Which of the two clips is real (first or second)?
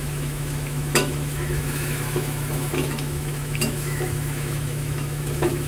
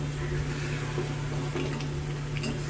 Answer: second